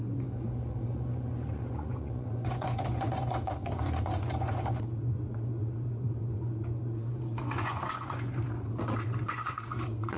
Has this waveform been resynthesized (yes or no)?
yes